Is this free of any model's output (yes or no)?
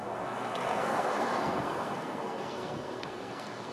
no